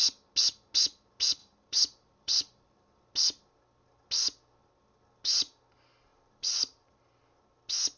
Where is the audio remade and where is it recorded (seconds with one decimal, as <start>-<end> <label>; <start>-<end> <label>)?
0.0-1.4 recorded; 1.4-3.0 remade; 3.0-6.1 recorded; 6.1-7.0 remade; 7.0-8.0 recorded